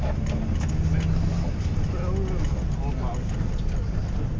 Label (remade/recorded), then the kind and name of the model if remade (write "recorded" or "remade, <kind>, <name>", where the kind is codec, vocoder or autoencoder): recorded